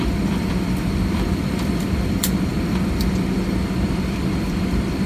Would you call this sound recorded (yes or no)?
no